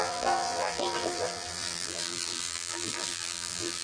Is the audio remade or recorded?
remade